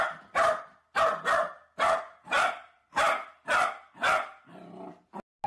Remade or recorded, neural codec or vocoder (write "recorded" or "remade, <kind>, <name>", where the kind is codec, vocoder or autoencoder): recorded